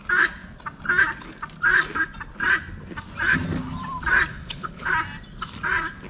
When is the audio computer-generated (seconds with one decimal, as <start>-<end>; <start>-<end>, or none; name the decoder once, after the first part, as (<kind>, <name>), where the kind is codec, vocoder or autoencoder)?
4.3-4.9 (codec, HILCodec)